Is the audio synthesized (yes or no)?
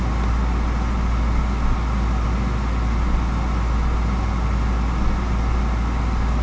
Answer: no